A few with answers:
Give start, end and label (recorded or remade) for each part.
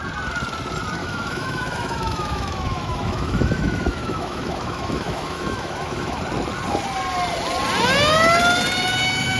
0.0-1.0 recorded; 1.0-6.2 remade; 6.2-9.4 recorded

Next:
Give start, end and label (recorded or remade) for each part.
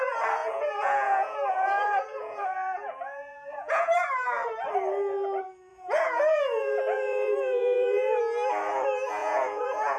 0.0-0.4 recorded; 0.4-4.3 remade; 4.3-5.7 recorded; 5.7-8.2 remade; 8.2-9.2 recorded; 9.2-10.0 remade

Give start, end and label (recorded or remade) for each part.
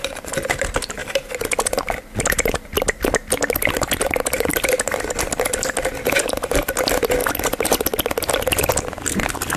0.0-9.6 recorded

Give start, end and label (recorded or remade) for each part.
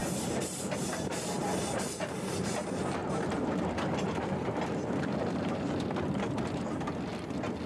0.0-2.5 remade; 2.5-3.0 recorded; 3.0-7.0 remade; 7.0-7.7 recorded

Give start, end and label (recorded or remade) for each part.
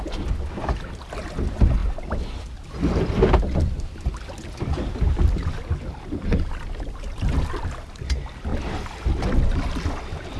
0.0-10.4 recorded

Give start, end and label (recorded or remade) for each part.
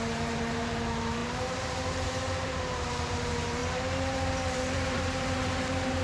0.0-6.0 remade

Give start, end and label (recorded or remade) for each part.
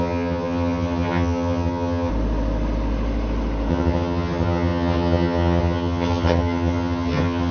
0.0-2.1 remade; 2.1-3.7 recorded; 3.7-7.5 remade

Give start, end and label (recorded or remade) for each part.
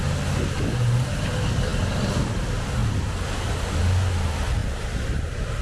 0.0-4.6 recorded; 4.6-5.6 remade